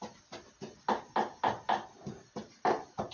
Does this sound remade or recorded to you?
recorded